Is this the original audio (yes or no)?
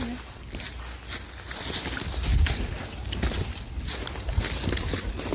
yes